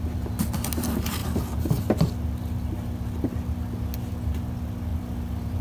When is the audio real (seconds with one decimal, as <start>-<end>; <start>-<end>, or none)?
0.0-4.9